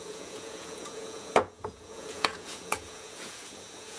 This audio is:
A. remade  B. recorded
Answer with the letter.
A